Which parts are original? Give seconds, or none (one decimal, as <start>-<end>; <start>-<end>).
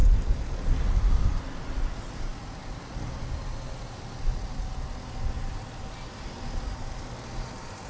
0.0-7.9